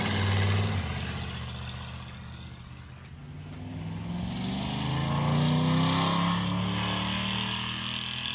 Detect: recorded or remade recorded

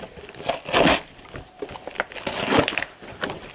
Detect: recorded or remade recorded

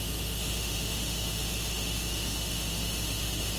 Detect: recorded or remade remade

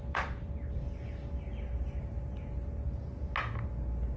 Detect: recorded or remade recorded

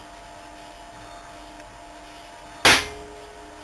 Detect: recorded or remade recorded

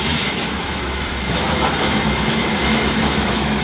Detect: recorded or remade remade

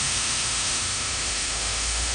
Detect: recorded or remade remade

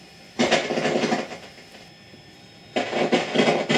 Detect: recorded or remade recorded